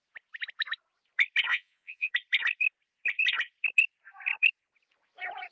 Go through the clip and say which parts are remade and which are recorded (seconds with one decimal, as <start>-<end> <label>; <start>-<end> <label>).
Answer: 0.0-1.5 recorded; 1.5-2.1 remade; 2.1-5.5 recorded